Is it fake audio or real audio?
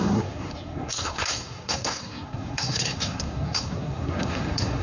fake